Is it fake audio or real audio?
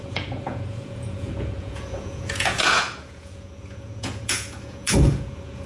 fake